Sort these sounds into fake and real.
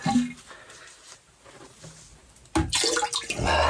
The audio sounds real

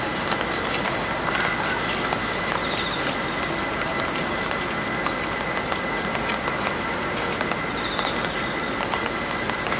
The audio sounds real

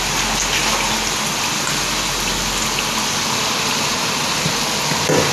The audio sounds real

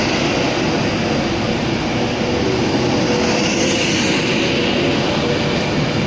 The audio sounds real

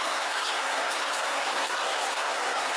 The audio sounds fake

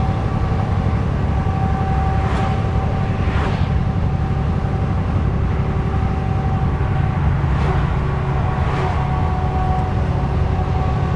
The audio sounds real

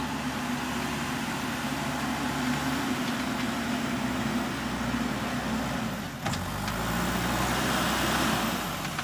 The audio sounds real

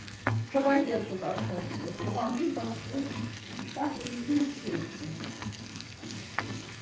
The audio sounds fake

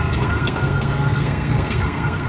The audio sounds fake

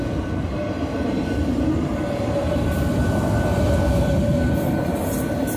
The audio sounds real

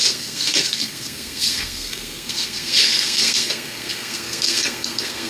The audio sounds fake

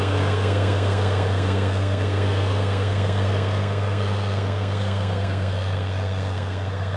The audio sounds fake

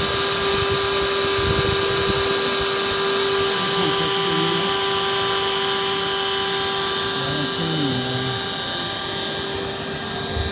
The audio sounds real